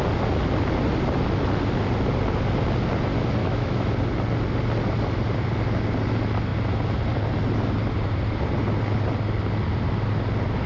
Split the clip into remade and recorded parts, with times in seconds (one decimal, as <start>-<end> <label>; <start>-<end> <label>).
0.0-3.4 recorded; 3.4-3.9 remade; 3.9-10.7 recorded